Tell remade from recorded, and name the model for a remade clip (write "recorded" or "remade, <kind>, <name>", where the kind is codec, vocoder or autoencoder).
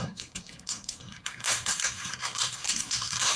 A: remade, codec, SNAC